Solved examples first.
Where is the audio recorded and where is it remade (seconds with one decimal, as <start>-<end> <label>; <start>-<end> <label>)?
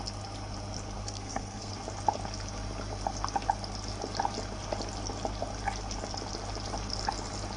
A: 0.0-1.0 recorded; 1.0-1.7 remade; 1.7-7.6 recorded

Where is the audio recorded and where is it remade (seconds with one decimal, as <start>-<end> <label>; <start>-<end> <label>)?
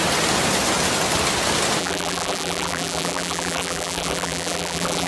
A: 0.0-1.8 recorded; 1.8-5.1 remade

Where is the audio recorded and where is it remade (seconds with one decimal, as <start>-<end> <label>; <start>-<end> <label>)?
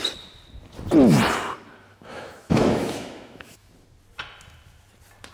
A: 0.0-1.9 recorded; 1.9-3.7 remade; 3.7-5.3 recorded